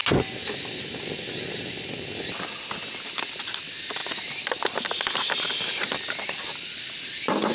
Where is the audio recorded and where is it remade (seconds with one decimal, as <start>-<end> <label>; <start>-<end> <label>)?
0.0-7.5 recorded